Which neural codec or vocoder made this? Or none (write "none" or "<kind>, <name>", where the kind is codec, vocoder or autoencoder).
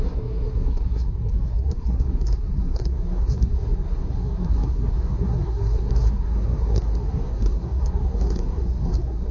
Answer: codec, SNAC